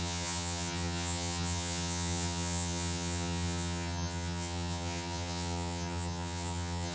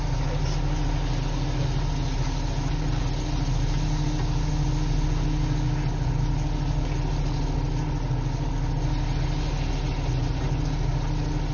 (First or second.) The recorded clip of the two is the second